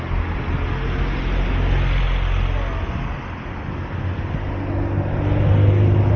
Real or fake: real